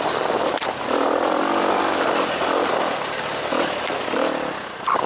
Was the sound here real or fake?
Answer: real